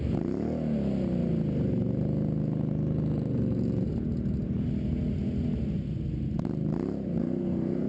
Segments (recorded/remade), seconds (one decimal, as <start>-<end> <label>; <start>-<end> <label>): 0.0-7.2 recorded; 7.2-7.9 remade